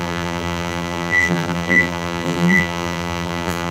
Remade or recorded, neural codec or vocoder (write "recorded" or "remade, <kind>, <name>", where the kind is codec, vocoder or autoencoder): remade, vocoder, BigVGAN v2